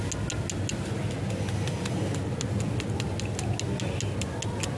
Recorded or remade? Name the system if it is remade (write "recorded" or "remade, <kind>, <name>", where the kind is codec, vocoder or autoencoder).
recorded